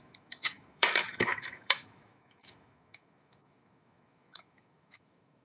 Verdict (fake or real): fake